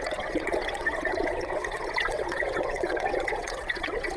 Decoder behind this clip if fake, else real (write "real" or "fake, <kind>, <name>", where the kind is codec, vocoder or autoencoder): fake, vocoder, WaveNeXt